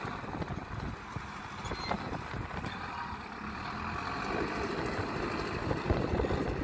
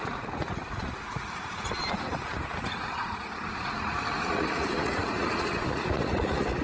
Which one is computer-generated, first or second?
second